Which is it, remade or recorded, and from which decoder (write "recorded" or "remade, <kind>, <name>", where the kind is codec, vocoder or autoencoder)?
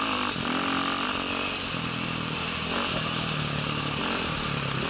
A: recorded